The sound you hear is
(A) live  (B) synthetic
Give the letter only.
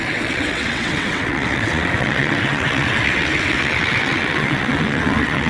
B